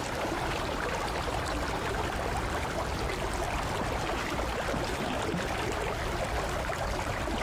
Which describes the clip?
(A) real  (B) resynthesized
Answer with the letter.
A